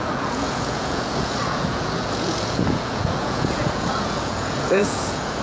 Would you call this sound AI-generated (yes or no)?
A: yes